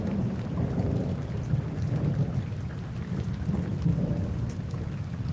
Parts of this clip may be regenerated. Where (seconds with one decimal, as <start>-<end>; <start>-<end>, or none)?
3.9-5.3